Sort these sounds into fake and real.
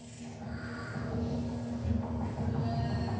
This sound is real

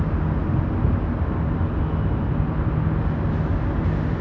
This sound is real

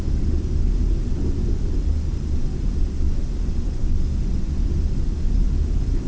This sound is real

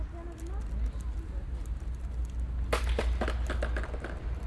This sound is real